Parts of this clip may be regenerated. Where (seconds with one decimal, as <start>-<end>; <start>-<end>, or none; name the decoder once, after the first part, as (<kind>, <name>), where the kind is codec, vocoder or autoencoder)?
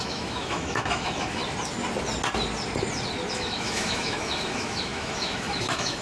0.0-1.4 (autoencoder, DAC-VAE); 3.3-6.0